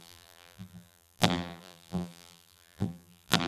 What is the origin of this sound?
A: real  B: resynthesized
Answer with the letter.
B